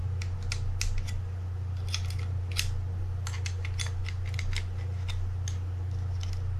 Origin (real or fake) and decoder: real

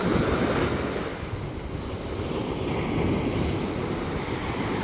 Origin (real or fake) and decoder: real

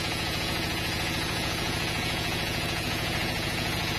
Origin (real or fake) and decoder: fake, vocoder, Vocos